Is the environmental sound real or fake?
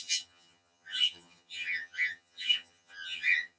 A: fake